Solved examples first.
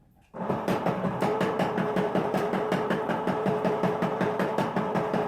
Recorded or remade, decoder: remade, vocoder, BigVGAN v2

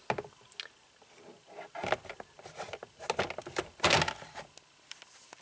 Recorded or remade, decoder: recorded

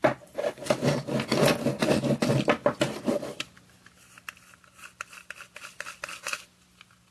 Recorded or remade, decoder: recorded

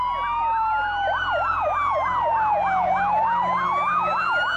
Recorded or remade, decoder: recorded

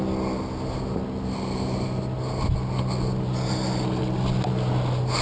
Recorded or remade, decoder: recorded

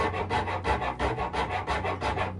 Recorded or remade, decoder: recorded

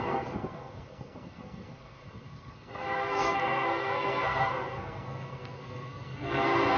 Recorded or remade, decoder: remade, codec, SNAC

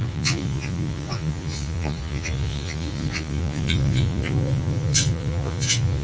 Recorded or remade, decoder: remade, vocoder, Vocos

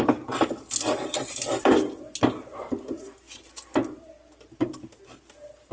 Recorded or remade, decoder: recorded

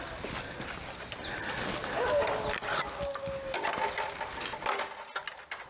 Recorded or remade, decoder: recorded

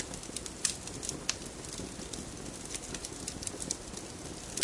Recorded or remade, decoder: recorded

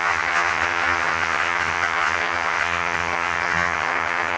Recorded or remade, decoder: remade, vocoder, HiFi-GAN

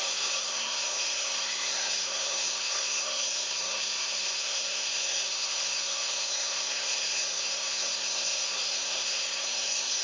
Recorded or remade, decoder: remade, codec, SNAC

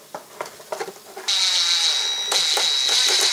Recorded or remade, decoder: recorded